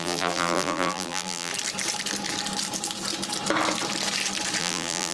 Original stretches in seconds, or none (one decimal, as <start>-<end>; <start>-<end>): 1.5-4.6